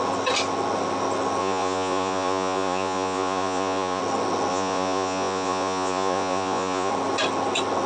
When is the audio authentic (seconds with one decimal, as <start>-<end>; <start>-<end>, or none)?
0.0-1.4; 4.0-4.5; 6.9-7.9